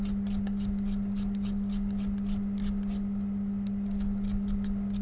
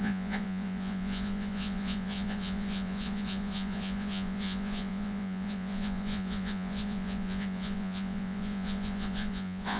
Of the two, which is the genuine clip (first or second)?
first